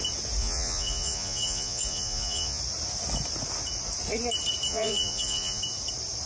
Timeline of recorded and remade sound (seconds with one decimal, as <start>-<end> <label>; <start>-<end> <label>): 0.0-0.4 recorded; 0.4-2.6 remade; 2.6-4.7 recorded; 4.7-5.6 remade; 5.6-6.3 recorded